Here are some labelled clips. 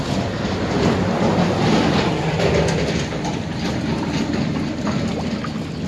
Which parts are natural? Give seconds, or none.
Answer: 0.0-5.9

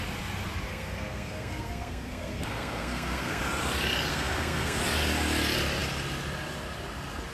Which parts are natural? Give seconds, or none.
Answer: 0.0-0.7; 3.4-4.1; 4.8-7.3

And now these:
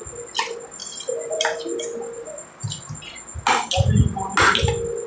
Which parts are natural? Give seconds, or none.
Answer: 0.0-5.1

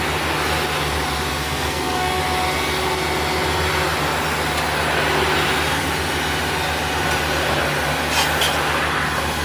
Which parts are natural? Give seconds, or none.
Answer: 0.0-1.4; 2.2-9.4

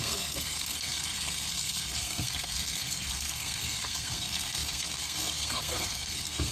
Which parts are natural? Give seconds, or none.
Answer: none